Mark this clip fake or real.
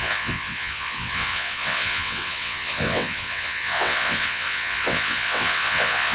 fake